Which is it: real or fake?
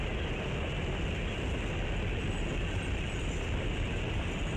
real